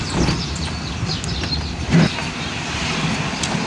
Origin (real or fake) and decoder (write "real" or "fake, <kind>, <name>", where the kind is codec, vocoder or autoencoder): real